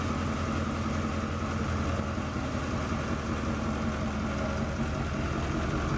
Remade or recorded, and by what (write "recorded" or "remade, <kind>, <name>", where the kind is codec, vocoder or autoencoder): recorded